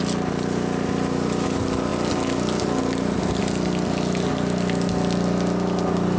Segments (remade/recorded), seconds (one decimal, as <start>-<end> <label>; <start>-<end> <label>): 0.0-6.2 recorded